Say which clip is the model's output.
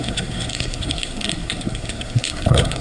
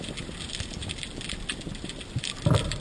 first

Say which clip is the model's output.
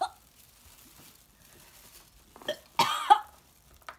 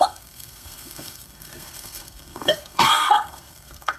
second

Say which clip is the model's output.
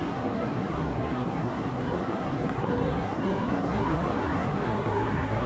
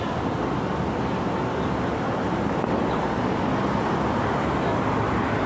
first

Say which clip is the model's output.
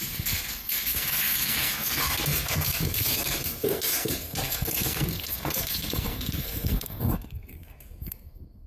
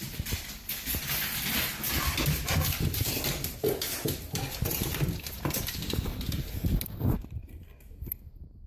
first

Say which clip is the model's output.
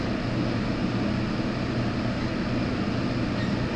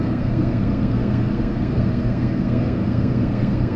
second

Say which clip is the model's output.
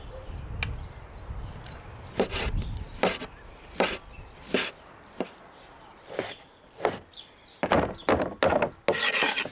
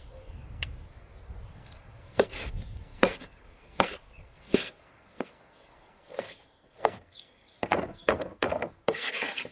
second